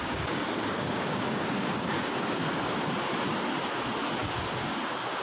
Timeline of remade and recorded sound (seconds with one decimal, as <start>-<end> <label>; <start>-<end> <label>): 0.0-2.8 remade; 2.8-4.2 recorded; 4.2-5.2 remade